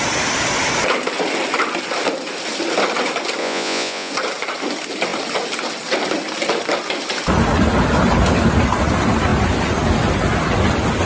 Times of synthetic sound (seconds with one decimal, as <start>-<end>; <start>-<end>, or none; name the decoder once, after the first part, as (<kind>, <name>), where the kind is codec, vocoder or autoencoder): 3.4-4.1 (vocoder, Vocos)